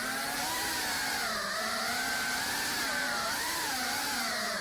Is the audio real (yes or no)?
no